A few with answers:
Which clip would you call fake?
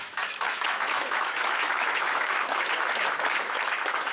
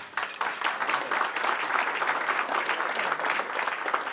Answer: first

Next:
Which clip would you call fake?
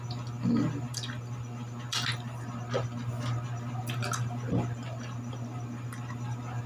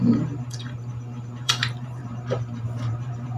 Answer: second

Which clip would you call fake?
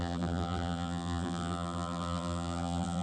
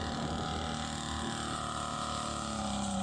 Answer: first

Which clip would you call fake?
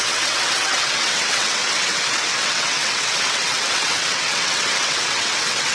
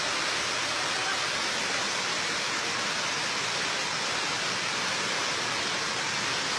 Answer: first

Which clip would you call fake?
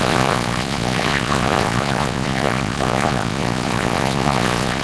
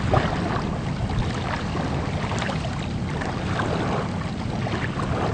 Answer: first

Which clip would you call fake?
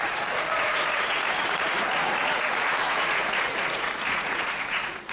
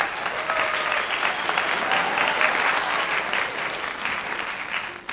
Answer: first